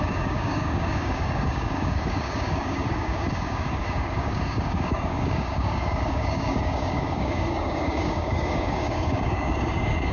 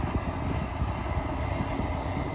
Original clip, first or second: second